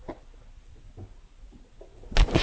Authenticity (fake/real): real